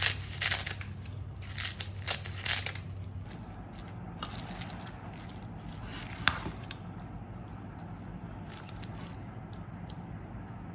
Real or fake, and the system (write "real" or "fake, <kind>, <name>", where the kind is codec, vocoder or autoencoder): real